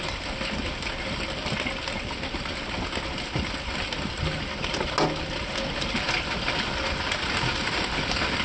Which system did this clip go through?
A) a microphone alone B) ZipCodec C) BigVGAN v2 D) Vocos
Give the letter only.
A